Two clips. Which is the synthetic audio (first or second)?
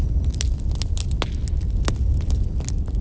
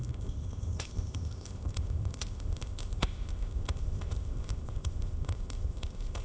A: second